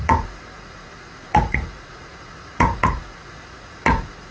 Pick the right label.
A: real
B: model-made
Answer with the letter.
B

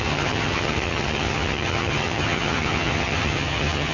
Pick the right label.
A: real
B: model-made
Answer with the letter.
B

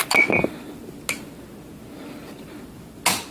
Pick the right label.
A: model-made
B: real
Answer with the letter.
B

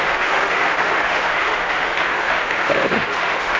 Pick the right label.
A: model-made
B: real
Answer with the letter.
A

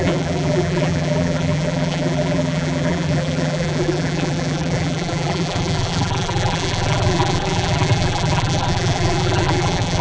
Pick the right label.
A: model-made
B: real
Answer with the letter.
A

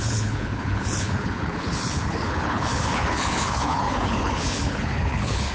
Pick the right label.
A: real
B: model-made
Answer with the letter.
B